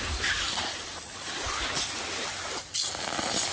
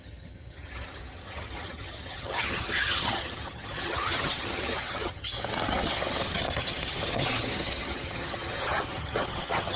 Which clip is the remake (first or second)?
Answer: second